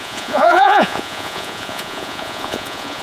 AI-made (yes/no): yes